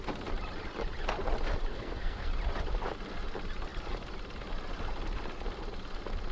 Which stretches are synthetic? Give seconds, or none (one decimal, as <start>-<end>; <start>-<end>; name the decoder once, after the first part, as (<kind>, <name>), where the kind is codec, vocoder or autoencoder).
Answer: 1.7-2.3 (codec, SNAC)